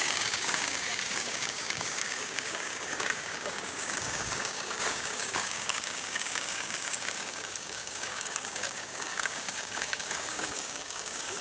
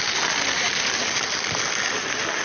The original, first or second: second